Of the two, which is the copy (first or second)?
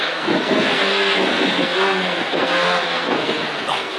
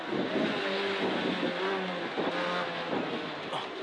first